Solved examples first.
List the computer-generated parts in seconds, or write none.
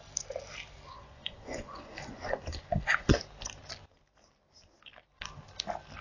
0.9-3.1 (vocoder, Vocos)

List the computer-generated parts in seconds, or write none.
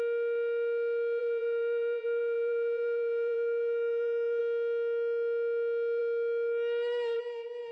1.2-4.4 (vocoder, BigVGAN v2)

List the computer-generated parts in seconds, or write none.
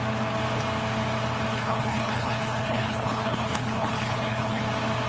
1.5-4.6 (codec, HILCodec)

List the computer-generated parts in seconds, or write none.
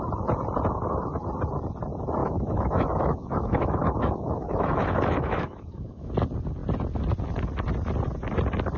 2.2-6.1 (autoencoder, DAC-VAE)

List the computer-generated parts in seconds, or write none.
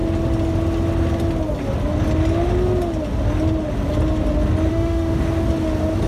4.7-5.2 (autoencoder, DAC-VAE)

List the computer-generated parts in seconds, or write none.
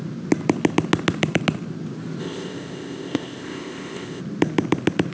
2.2-4.2 (codec, ZipCodec)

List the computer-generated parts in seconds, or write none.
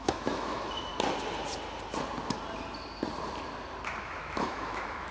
0.0-0.9 (autoencoder, DAC-VAE); 4.0-5.1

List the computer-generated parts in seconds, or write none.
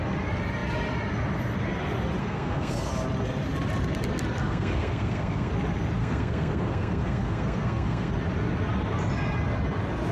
2.2-2.9 (codec, SNAC); 4.4-5.5; 6.0-8.1